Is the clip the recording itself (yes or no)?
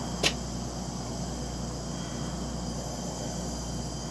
yes